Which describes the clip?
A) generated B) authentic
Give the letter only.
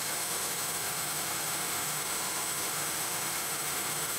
A